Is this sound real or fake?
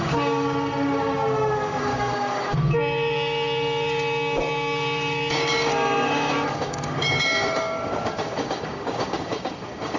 fake